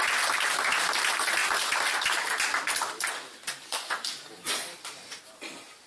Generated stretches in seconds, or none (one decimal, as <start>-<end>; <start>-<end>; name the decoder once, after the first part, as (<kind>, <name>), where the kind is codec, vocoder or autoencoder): none